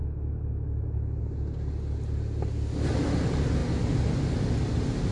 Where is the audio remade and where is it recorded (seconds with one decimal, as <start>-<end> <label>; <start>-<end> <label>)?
0.0-1.2 remade; 1.2-5.1 recorded